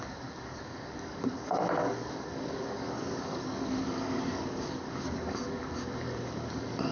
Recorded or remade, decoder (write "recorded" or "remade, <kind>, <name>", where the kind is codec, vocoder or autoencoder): remade, codec, DAC